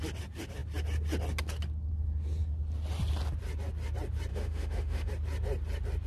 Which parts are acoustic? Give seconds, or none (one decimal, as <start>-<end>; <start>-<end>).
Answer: 0.0-4.3; 5.1-6.1